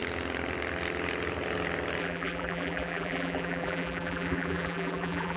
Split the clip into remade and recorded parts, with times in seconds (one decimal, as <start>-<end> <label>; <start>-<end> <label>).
0.0-2.0 recorded; 2.0-5.4 remade